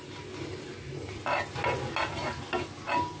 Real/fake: real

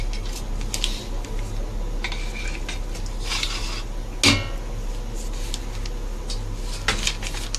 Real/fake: real